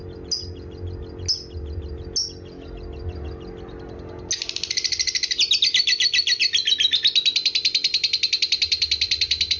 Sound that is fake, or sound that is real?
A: real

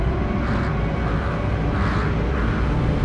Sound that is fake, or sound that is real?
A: real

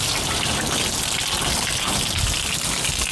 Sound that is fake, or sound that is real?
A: real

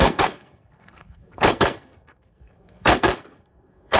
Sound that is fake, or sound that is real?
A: fake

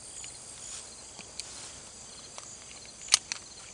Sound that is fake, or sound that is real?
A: real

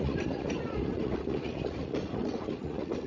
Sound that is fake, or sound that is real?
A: fake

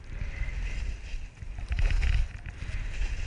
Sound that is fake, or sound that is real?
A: real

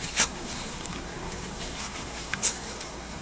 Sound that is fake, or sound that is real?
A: fake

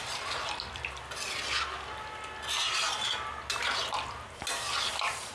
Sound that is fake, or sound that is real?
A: real